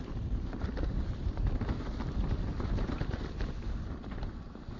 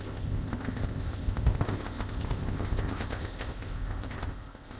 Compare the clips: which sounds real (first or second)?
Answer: first